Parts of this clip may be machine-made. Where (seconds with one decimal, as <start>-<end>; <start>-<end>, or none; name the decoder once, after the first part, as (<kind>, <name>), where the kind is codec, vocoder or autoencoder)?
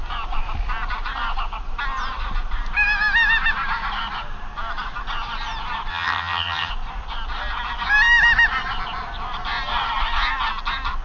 5.9-6.7 (vocoder, HiFi-GAN)